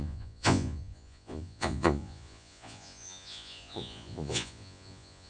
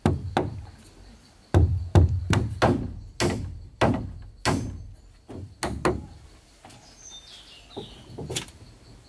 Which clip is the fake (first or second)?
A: first